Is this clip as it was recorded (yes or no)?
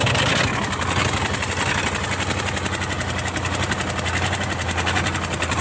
yes